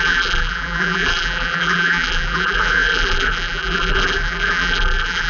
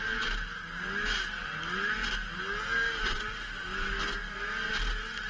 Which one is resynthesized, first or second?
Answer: first